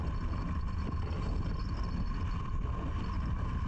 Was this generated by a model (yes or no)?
no